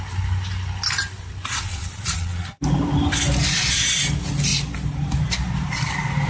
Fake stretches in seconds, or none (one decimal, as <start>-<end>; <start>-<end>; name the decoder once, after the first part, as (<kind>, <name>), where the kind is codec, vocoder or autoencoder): 1.5-2.6 (vocoder, Vocos)